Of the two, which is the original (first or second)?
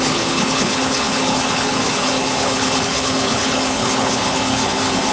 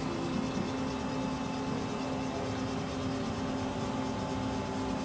second